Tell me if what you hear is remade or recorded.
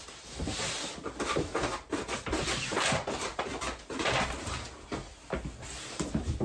recorded